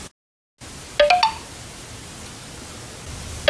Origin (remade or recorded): recorded